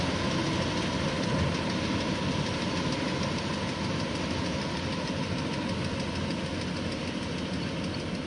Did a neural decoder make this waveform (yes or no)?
no